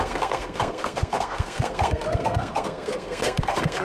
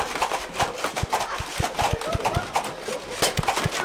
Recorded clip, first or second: second